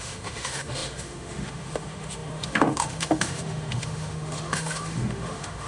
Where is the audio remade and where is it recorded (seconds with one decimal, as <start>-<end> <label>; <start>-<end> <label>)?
0.0-5.7 remade

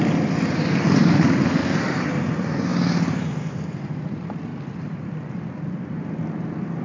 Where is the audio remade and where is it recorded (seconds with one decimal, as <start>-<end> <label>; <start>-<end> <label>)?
0.0-6.8 recorded

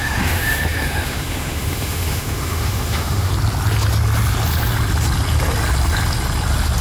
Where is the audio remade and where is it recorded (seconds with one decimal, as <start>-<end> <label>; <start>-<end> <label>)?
0.0-3.3 remade; 3.3-6.8 recorded

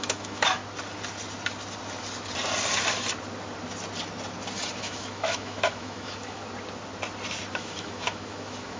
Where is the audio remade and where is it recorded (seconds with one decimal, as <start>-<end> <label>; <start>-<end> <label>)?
0.0-0.6 remade; 0.6-4.8 recorded; 4.8-6.4 remade; 6.4-7.5 recorded; 7.5-8.8 remade